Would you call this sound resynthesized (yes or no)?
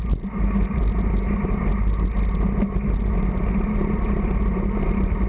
no